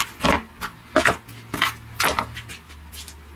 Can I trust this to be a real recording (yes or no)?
yes